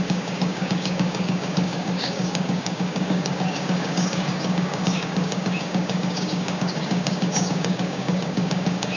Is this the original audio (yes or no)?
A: no